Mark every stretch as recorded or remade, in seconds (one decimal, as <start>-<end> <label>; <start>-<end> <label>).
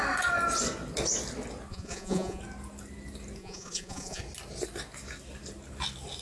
0.0-1.7 recorded; 1.7-2.4 remade; 2.4-3.4 recorded; 3.4-4.2 remade; 4.2-6.2 recorded